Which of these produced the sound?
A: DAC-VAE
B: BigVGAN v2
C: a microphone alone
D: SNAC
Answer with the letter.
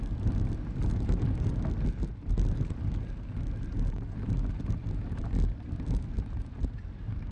C